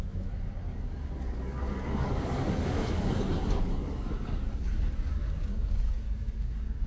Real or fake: fake